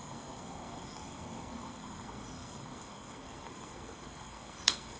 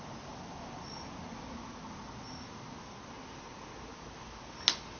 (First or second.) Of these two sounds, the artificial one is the first